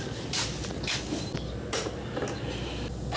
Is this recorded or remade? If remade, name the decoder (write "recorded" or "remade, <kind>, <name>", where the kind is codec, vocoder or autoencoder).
recorded